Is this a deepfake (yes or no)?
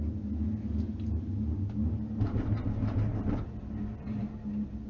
no